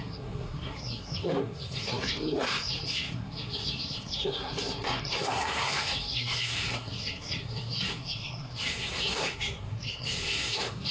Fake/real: fake